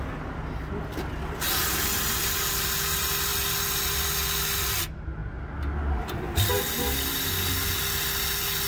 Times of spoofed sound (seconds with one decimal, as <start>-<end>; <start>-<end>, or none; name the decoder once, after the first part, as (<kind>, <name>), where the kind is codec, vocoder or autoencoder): none